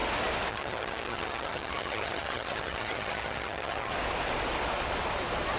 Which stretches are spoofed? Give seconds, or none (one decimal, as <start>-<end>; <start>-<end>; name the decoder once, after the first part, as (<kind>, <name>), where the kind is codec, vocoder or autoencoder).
0.5-3.9 (vocoder, HiFi-GAN)